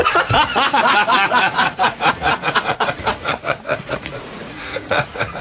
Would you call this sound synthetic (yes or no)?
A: yes